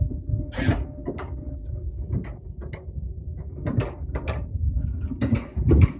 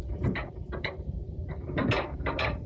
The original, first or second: first